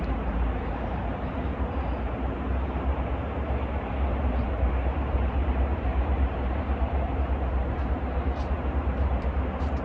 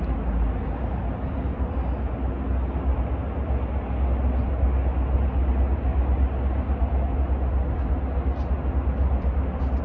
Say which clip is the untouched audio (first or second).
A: second